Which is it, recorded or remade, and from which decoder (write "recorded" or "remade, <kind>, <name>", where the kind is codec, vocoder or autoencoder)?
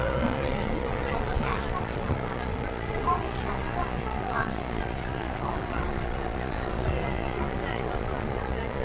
remade, vocoder, Vocos